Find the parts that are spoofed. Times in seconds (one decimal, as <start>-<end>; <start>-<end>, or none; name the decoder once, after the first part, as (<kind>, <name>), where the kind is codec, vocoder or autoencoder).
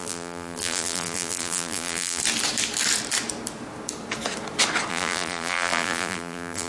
0.0-2.2 (vocoder, BigVGAN v2); 4.9-6.7